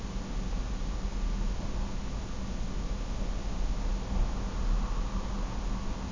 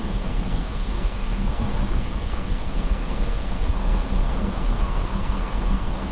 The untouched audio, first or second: first